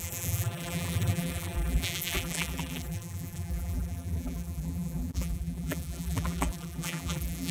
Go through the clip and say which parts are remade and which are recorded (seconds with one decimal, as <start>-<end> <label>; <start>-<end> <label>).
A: 0.0-7.5 remade